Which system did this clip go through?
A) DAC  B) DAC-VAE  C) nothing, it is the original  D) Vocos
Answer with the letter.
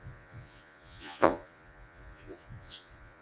D